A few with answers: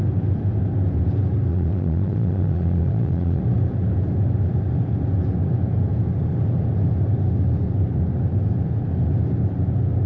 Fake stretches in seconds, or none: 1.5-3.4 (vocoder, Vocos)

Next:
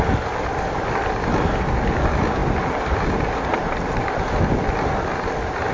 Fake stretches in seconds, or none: none

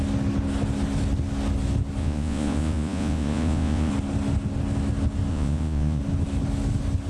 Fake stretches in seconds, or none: 2.0-3.9 (vocoder, Vocos); 5.3-6.0